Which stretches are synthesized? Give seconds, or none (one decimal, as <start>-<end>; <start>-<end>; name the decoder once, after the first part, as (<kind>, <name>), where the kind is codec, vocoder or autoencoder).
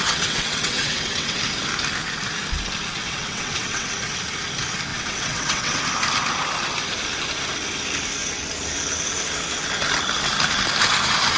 0.0-1.4 (vocoder, WaveNeXt); 3.0-3.9; 4.9-5.8